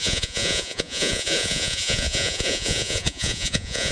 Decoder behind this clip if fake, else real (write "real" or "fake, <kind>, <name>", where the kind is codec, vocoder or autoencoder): fake, vocoder, Vocos